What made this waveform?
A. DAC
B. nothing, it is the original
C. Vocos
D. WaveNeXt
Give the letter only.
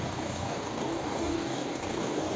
A